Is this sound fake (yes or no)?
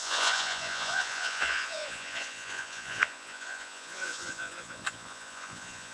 yes